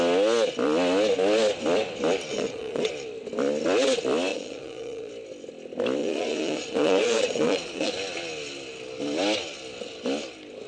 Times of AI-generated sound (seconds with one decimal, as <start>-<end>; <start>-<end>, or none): 2.3-2.9; 4.3-5.1; 6.0-7.9

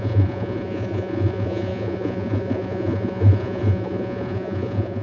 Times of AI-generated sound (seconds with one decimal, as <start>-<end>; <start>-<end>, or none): 0.0-5.0

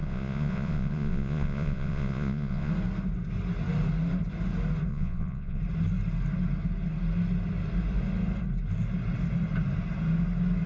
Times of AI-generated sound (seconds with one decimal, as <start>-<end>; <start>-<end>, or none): 0.0-2.7; 4.9-5.6

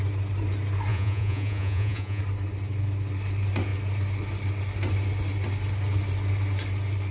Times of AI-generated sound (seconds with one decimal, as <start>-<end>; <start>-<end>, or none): 0.9-2.2

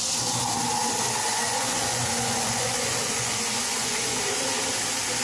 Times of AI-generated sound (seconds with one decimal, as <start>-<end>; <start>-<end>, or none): 1.3-4.4

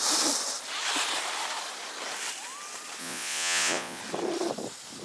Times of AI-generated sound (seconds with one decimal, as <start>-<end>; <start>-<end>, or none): 3.0-4.0

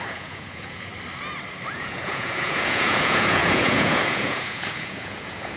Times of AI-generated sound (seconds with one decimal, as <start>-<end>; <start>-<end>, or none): 0.0-0.9; 1.7-5.6

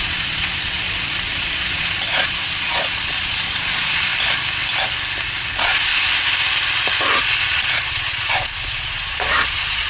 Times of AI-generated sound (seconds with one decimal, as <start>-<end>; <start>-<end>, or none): 0.0-4.1; 5.5-5.9; 7.7-9.9